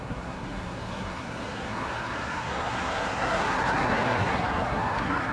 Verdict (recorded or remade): remade